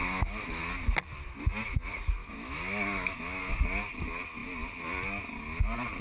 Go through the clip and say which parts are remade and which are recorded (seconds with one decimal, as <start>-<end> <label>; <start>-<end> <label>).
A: 0.0-0.6 remade; 0.6-2.2 recorded; 2.2-3.4 remade; 3.4-6.0 recorded